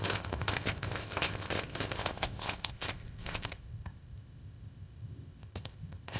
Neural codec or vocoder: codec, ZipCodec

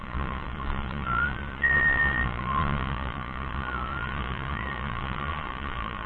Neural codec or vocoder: vocoder, Vocos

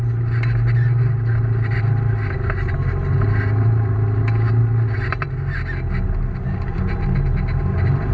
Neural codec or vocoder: none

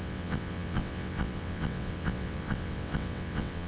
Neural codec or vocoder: vocoder, WaveNeXt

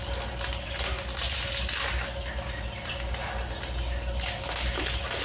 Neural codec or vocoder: none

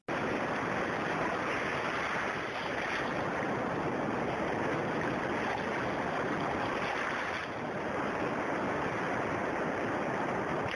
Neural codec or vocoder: none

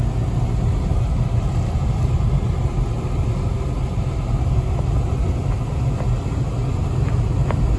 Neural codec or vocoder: none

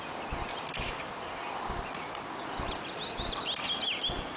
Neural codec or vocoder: none